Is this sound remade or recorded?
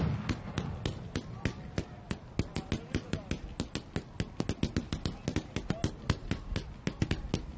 recorded